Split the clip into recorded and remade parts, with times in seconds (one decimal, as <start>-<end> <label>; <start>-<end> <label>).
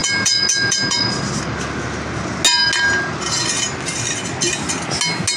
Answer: 0.0-1.0 remade; 1.0-5.4 recorded